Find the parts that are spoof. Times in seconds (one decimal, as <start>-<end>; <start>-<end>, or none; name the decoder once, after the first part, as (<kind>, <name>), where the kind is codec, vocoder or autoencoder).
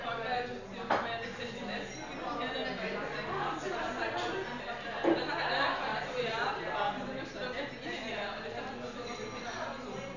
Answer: none